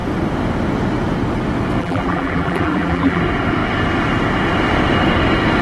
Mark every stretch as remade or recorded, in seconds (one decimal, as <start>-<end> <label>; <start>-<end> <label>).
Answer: 0.0-1.8 recorded; 1.8-3.2 remade; 3.2-5.6 recorded